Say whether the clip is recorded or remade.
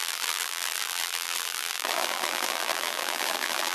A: remade